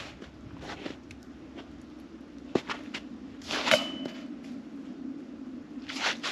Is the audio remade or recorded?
recorded